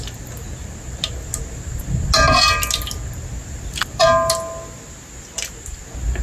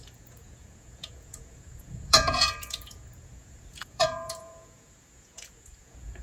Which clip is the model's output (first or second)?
second